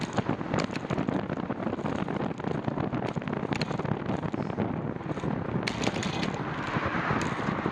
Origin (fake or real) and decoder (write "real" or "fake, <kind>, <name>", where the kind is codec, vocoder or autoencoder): real